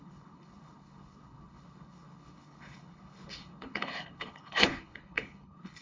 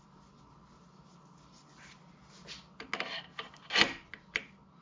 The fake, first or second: first